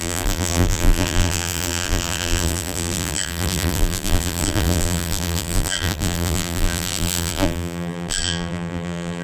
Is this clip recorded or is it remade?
remade